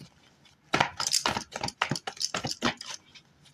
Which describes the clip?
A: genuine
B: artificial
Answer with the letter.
A